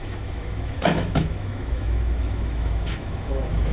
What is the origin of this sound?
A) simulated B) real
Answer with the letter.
A